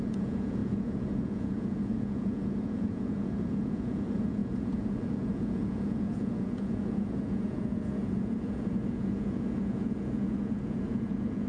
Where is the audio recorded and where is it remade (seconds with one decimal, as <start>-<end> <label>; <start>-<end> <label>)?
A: 0.0-11.5 remade